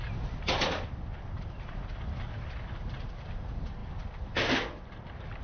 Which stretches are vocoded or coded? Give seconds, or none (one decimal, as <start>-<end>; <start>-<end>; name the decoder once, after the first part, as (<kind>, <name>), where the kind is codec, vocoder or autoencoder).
none